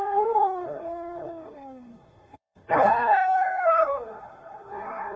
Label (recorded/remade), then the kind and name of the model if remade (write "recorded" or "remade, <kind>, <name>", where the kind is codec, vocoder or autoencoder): remade, codec, SNAC